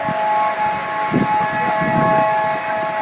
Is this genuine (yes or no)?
yes